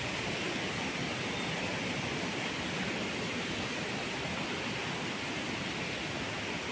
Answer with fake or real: real